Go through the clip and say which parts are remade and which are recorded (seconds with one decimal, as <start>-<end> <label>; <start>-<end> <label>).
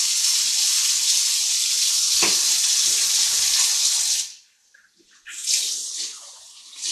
0.0-1.4 recorded; 1.4-2.0 remade; 2.0-6.9 recorded